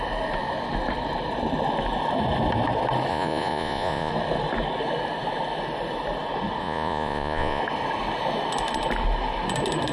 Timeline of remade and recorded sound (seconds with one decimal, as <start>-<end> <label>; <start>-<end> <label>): 0.0-3.1 recorded; 3.1-4.1 remade; 4.1-6.6 recorded; 6.6-7.6 remade; 7.6-9.9 recorded

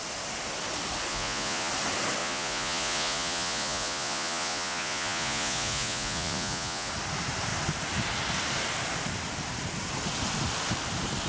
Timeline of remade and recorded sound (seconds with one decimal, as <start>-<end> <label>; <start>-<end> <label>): 0.0-1.1 recorded; 1.1-1.7 remade; 1.7-2.2 recorded; 2.2-6.9 remade; 6.9-11.3 recorded

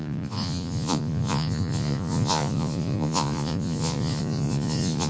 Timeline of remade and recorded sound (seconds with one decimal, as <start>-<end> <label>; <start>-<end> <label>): 0.0-5.1 remade

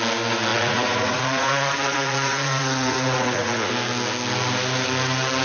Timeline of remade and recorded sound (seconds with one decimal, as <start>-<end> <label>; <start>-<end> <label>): 0.0-0.5 recorded; 0.5-3.7 remade; 3.7-5.4 recorded

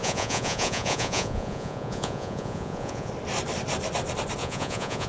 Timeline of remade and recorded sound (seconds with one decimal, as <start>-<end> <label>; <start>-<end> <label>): 0.0-3.1 remade; 3.1-4.4 recorded; 4.4-5.1 remade

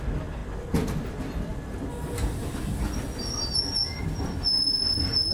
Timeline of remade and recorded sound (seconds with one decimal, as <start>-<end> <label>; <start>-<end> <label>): 0.0-5.3 recorded